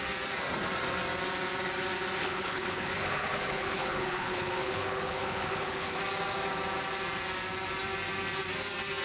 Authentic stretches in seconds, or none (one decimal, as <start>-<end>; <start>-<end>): 0.0-2.2; 6.0-9.0